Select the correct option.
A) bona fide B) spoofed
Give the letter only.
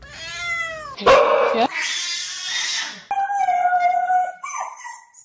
A